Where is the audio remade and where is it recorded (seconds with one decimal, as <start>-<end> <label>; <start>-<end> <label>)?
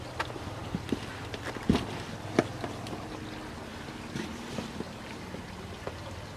0.0-6.4 recorded